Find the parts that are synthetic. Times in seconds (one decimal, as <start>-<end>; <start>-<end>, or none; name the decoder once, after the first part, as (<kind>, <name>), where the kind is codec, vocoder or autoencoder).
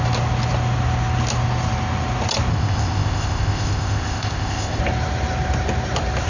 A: 2.5-4.8 (codec, ZipCodec)